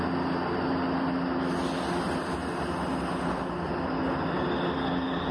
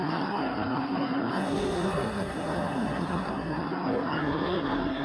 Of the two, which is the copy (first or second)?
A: second